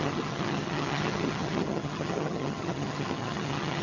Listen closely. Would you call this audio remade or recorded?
remade